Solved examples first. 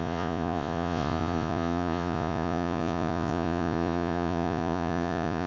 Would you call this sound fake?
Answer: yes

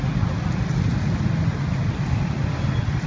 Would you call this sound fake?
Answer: no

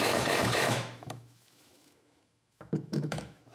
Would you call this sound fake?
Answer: yes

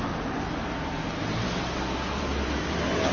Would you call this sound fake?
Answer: yes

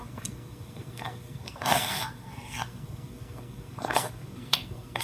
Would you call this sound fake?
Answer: yes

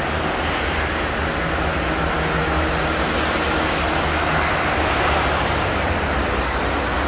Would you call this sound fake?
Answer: no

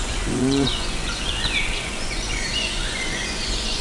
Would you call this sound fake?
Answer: yes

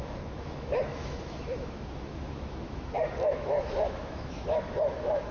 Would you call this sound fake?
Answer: yes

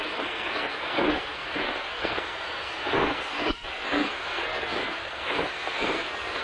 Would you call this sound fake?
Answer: yes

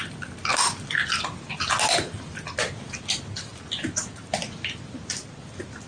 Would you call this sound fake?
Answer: no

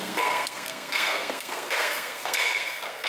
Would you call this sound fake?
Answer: yes